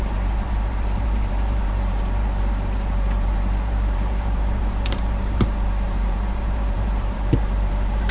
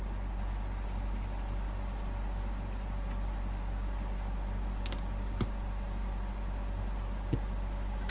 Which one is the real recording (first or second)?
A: second